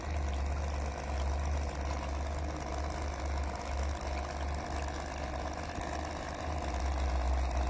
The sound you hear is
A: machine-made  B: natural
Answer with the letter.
B